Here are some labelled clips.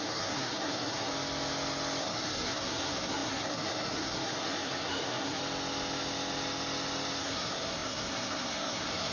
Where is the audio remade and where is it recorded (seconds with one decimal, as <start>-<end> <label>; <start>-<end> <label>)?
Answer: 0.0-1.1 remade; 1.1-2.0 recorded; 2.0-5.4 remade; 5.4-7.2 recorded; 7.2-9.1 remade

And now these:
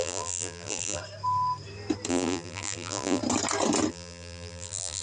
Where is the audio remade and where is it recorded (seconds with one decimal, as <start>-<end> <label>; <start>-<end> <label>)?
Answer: 0.0-1.0 remade; 1.0-2.1 recorded; 2.1-3.2 remade; 3.2-3.9 recorded; 3.9-5.0 remade

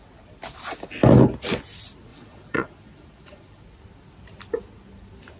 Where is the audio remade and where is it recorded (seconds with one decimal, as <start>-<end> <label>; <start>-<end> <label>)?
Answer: 0.0-2.1 recorded; 2.1-3.6 remade; 3.6-5.4 recorded

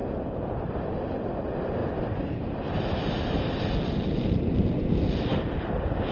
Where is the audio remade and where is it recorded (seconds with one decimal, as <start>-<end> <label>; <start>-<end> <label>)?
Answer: 0.0-6.1 recorded

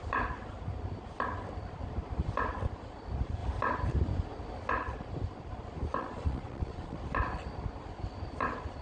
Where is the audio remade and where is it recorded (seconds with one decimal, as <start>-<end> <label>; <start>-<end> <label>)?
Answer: 0.0-6.0 recorded; 6.0-7.0 remade; 7.0-8.8 recorded

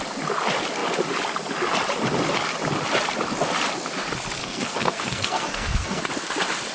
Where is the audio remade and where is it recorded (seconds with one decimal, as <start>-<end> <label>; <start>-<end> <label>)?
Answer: 0.0-4.4 recorded; 4.4-6.0 remade; 6.0-6.7 recorded

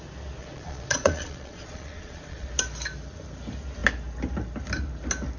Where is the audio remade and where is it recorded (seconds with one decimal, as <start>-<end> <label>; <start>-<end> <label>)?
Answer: 0.0-0.4 recorded; 0.4-2.5 remade; 2.5-5.4 recorded